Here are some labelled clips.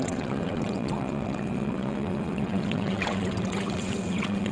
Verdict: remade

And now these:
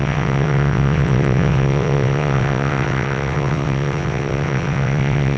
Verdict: remade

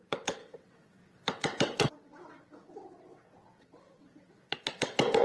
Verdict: remade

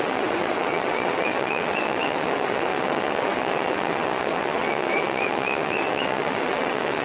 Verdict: remade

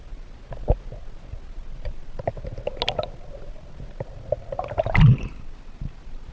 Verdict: recorded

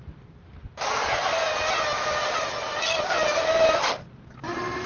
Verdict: recorded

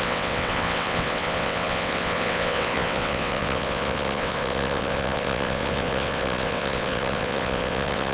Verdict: remade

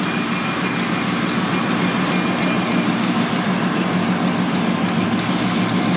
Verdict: recorded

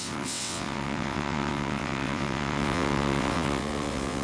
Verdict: remade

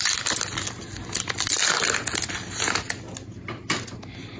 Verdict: recorded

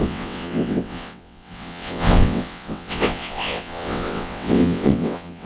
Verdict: remade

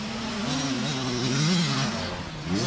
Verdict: recorded